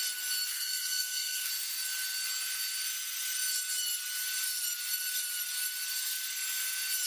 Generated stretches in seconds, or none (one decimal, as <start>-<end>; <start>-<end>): 0.5-1.5